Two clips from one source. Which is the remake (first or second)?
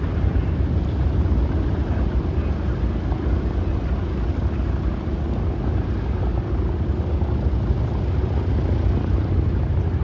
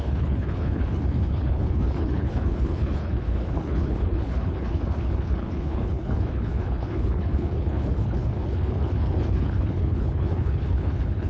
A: second